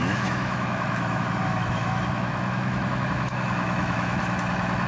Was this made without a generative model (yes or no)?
no